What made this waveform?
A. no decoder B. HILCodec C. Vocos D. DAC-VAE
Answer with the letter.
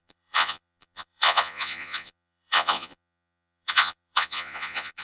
C